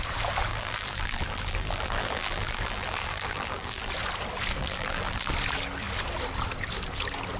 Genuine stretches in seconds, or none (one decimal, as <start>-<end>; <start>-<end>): 0.0-0.5; 3.9-4.6; 5.3-7.4